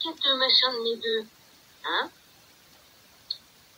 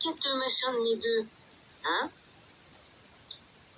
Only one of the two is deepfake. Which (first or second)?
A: first